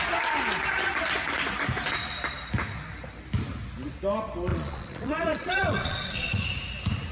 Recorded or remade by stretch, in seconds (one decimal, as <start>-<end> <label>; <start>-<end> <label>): 0.0-4.5 recorded; 4.5-6.4 remade; 6.4-7.1 recorded